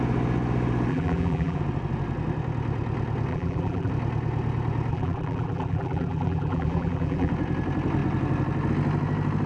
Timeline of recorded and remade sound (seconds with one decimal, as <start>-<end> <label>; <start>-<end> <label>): 0.0-0.9 recorded; 0.9-1.6 remade; 1.6-3.3 recorded; 3.3-3.9 remade; 3.9-4.9 recorded; 4.9-7.3 remade; 7.3-9.5 recorded